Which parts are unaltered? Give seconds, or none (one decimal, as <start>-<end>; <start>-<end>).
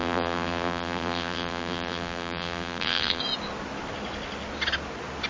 3.2-5.3